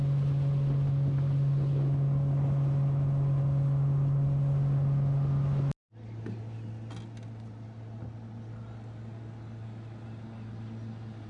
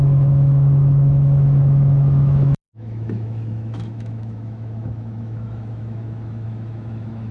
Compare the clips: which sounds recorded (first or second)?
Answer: first